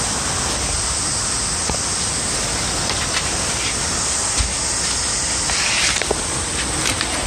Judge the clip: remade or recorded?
recorded